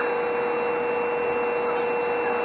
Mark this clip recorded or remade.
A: recorded